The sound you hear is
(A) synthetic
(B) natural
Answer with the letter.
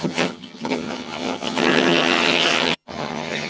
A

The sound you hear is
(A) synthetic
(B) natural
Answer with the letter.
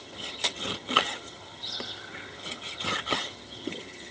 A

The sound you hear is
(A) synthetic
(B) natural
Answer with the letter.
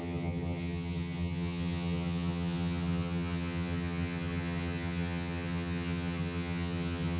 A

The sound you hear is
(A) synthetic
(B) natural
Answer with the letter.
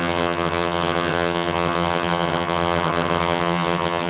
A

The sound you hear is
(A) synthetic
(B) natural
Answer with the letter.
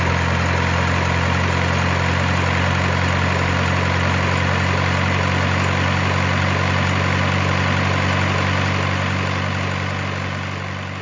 B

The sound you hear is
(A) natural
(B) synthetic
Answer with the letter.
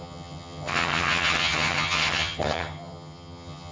B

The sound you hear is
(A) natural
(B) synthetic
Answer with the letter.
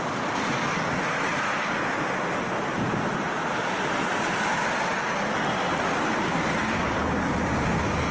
A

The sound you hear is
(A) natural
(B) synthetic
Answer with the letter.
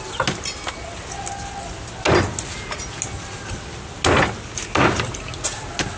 A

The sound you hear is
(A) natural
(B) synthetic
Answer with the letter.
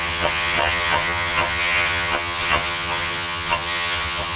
B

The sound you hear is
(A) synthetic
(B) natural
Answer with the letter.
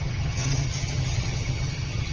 A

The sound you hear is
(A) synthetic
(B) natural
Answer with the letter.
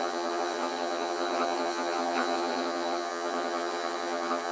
A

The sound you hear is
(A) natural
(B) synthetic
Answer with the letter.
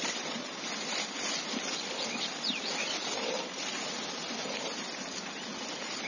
A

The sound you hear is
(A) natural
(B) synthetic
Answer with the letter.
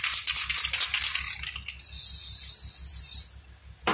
A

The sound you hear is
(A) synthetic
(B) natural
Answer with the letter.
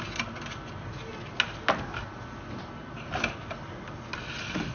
B